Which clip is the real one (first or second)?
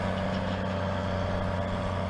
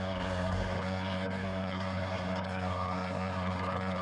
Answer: first